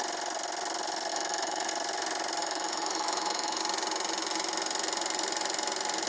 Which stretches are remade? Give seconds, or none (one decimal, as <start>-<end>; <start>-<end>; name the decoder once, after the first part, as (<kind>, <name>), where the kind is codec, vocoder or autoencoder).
1.1-1.7 (autoencoder, DAC-VAE); 2.4-3.6

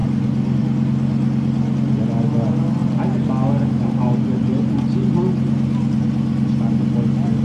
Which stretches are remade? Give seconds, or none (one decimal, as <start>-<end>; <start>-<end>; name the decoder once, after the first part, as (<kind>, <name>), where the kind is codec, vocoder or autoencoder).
none